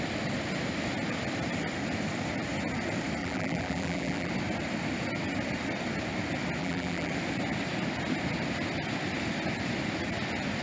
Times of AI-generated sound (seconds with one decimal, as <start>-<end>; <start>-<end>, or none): 3.2-4.3; 6.6-7.1